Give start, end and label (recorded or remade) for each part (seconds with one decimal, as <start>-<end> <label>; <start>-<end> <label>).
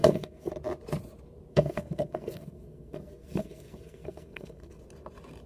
0.0-0.5 remade; 0.5-1.5 recorded; 1.5-4.8 remade; 4.8-5.5 recorded